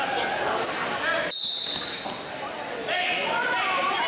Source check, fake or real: fake